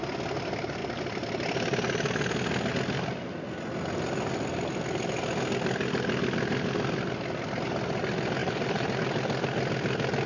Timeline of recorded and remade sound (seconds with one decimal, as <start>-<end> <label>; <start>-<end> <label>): 0.0-8.4 recorded; 8.4-9.0 remade; 9.0-10.3 recorded